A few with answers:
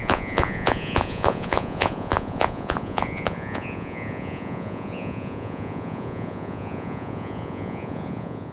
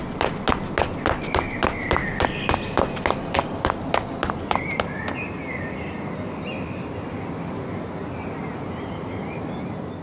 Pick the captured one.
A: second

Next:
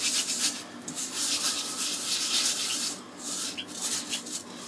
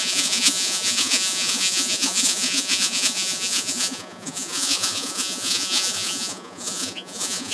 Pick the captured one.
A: first